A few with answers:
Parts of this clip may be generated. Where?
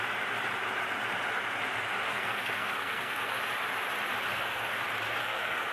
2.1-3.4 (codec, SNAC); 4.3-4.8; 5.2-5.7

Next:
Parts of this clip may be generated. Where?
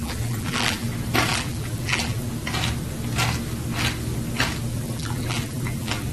0.0-0.9 (vocoder, BigVGAN v2); 1.3-2.3; 4.7-6.1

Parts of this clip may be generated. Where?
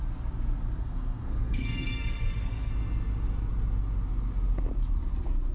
0.8-2.7 (codec, SNAC)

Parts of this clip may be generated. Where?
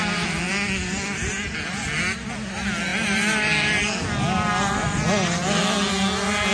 none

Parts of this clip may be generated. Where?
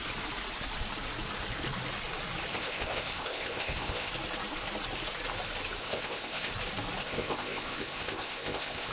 2.5-4.1 (codec, ZipCodec); 5.8-6.5; 7.0-8.9